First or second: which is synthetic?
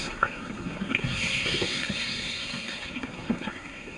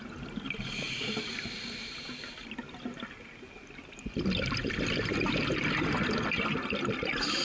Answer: first